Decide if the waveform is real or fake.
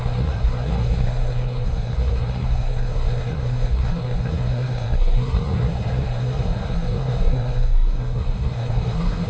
fake